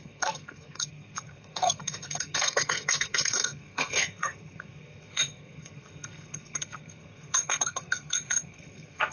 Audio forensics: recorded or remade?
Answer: remade